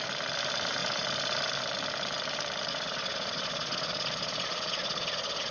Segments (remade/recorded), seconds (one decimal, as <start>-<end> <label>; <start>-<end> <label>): 0.0-2.7 recorded; 2.7-5.5 remade